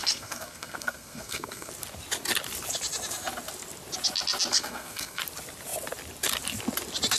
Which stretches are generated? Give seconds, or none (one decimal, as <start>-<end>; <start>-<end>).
0.0-1.7; 4.5-5.2